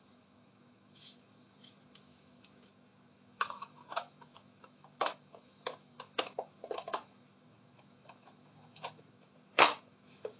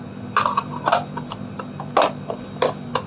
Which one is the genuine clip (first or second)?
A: second